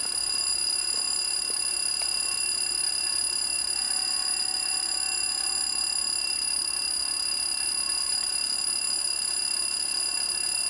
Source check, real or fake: real